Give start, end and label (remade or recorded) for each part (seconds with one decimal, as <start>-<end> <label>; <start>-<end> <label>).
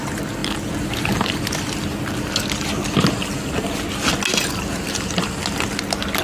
0.0-6.2 recorded